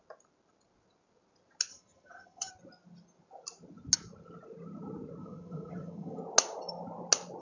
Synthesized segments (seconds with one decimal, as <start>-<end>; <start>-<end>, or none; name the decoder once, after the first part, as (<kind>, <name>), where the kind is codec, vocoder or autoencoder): 1.7-2.5 (vocoder, HiFi-GAN); 5.2-6.2